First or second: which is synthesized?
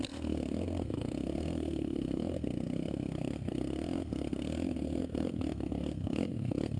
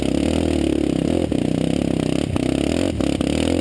first